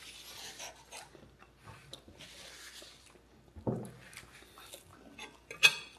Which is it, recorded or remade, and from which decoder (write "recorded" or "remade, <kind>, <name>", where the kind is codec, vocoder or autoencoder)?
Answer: recorded